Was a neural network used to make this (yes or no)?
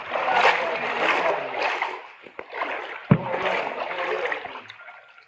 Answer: no